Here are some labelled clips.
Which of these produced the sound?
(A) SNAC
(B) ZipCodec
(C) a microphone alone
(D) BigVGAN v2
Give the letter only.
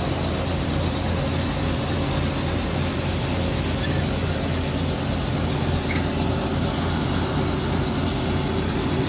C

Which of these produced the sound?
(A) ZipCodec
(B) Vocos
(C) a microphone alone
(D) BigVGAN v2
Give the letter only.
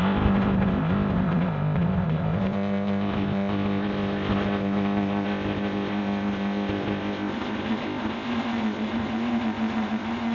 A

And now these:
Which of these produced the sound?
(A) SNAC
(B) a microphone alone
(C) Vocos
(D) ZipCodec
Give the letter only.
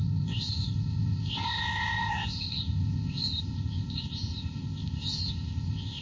D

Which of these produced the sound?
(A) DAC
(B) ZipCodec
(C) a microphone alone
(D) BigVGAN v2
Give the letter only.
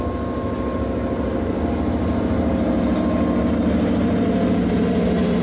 C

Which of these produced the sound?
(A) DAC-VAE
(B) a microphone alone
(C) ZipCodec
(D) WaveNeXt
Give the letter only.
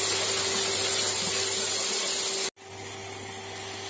B